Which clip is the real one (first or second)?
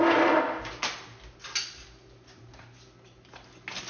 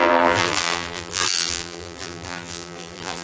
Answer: first